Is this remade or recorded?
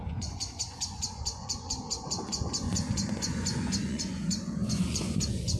remade